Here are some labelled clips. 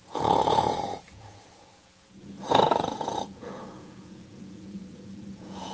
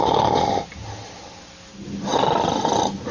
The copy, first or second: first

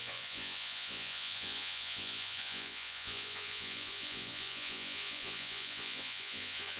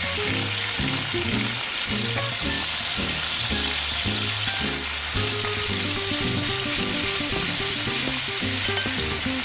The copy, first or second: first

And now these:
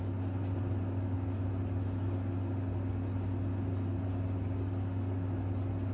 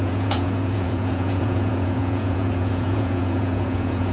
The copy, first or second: second